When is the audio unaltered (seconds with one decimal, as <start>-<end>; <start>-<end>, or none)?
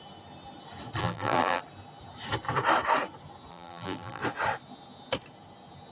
0.0-1.0; 1.6-3.5; 4.2-5.9